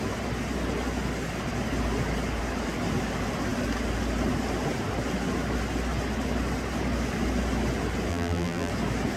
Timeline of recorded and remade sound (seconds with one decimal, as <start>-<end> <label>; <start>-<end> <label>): 0.0-8.1 recorded; 8.1-8.7 remade; 8.7-9.2 recorded